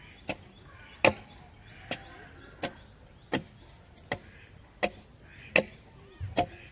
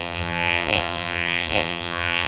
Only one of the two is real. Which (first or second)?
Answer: first